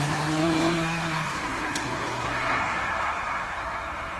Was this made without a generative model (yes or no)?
no